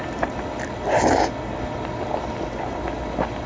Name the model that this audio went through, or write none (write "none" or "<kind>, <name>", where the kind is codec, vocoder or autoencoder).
none